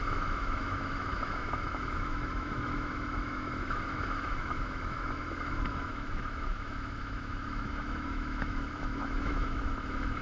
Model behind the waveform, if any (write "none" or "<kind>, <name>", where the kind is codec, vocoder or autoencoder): autoencoder, DAC-VAE